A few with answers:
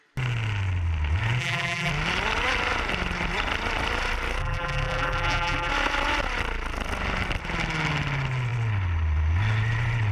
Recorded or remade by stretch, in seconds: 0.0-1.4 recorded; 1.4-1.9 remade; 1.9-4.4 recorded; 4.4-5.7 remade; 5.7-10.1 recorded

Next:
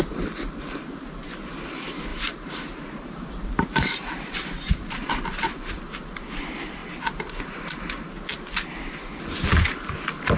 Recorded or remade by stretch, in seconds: 0.0-2.1 recorded; 2.1-5.1 remade; 5.1-6.8 recorded; 6.8-8.1 remade; 8.1-10.4 recorded

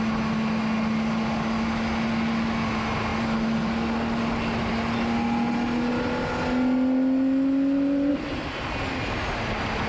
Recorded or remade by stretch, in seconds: 0.0-9.9 recorded